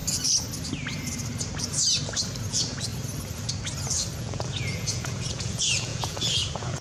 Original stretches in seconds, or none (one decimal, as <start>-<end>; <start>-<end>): 0.0-2.5; 2.9-4.2